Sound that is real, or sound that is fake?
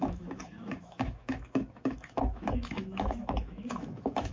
fake